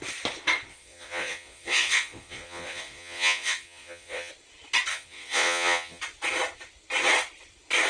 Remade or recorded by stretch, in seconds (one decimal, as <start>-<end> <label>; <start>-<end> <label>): 0.0-0.7 recorded; 0.7-4.3 remade; 4.3-4.9 recorded; 4.9-6.0 remade; 6.0-7.9 recorded